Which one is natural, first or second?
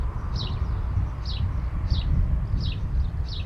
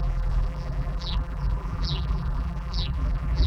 first